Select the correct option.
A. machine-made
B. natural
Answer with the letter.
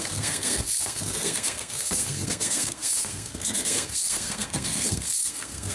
A